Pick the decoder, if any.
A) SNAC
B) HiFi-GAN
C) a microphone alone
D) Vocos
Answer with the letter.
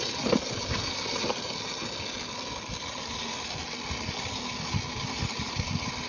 C